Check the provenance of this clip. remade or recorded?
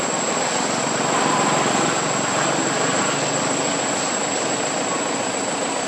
recorded